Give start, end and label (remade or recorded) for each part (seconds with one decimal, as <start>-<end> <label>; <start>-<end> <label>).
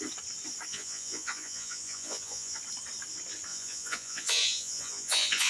0.0-0.7 recorded; 0.7-2.6 remade; 2.6-3.5 recorded; 3.5-5.5 remade